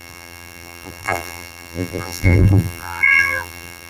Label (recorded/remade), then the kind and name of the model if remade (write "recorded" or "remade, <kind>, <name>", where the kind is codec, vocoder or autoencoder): remade, vocoder, BigVGAN v2